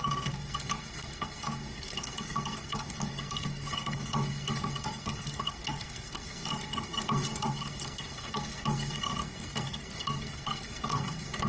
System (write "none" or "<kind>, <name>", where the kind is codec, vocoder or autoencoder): codec, SNAC